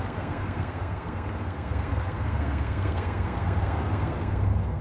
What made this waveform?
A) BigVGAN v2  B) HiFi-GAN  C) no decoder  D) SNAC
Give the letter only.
D